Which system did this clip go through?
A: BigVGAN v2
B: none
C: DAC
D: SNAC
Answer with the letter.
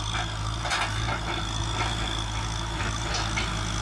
B